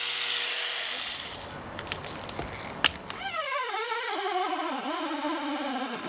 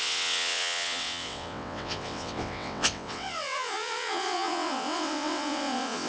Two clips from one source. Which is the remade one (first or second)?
second